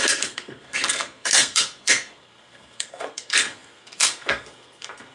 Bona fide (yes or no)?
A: no